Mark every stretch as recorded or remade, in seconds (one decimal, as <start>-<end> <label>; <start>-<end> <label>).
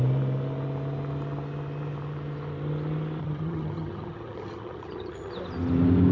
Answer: 0.0-3.2 recorded; 3.2-5.3 remade; 5.3-6.1 recorded